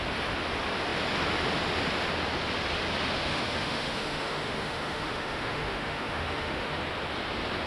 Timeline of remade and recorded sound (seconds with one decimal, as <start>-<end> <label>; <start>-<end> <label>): 0.0-3.2 recorded; 3.2-6.8 remade; 6.8-7.7 recorded